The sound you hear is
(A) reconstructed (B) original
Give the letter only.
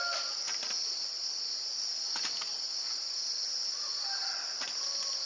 B